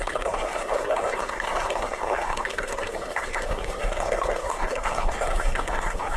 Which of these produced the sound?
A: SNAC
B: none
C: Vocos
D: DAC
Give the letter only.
A